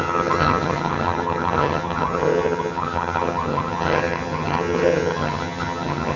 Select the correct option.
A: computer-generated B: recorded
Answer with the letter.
A